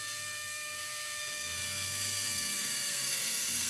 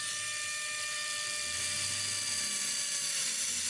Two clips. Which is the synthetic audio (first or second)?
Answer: first